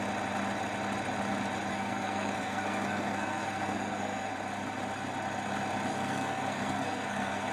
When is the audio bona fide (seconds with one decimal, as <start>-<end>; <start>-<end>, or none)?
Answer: 0.0-1.7; 4.3-5.9